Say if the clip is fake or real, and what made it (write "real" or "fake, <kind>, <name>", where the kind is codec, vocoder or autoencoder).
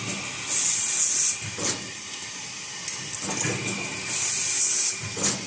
real